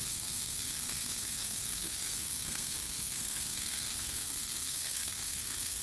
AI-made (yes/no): yes